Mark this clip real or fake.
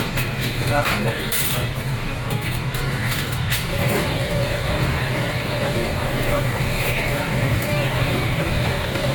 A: fake